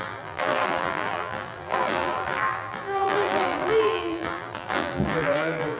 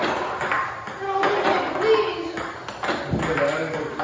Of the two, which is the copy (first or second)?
first